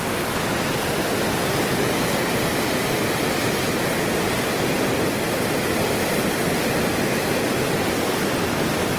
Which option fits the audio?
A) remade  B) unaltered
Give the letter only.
B